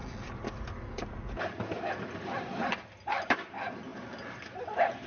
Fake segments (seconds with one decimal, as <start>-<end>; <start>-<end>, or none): 0.0-3.9